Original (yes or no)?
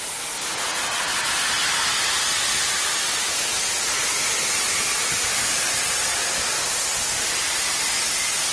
yes